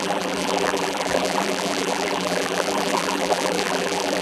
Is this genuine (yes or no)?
no